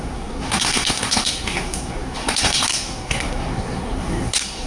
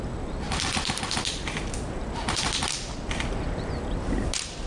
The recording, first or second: second